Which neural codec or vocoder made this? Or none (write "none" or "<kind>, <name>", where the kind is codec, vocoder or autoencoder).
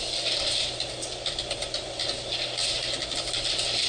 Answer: none